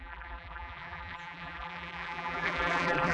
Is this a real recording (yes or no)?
no